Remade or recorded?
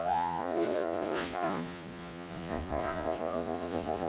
remade